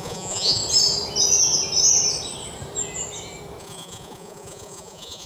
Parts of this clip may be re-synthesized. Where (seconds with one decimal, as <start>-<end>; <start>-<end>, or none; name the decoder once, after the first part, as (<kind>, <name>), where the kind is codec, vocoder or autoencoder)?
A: 0.0-0.6 (vocoder, Vocos); 3.6-5.3

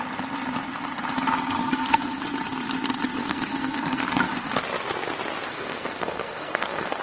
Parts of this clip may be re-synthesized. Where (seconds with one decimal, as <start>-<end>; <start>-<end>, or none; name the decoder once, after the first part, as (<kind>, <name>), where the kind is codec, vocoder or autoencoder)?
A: 1.6-2.2 (codec, SNAC); 3.2-4.5; 5.5-7.0

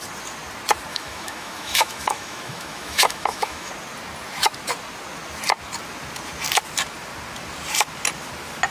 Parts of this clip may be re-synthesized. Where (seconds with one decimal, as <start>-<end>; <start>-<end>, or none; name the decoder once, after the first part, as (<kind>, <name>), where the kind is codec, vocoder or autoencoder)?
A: 0.9-3.7 (autoencoder, DAC-VAE)

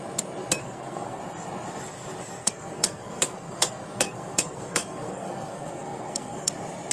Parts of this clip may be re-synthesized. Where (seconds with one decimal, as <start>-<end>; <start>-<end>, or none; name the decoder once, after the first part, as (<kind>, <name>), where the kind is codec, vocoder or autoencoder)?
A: 0.6-1.2 (codec, SNAC); 2.4-6.5